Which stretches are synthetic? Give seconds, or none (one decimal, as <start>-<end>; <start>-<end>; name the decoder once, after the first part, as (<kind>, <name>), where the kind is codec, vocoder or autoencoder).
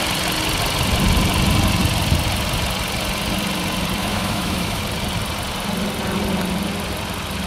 4.0-4.8 (autoencoder, DAC-VAE)